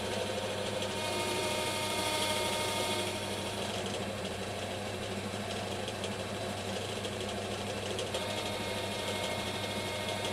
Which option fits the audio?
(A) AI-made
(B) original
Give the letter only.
A